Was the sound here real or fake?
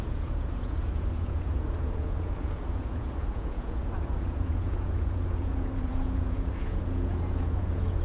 fake